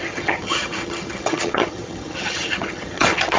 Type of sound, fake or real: fake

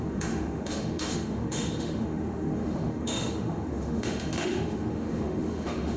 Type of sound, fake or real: fake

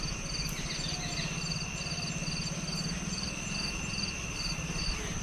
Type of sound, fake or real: real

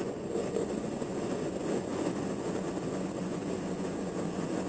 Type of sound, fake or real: fake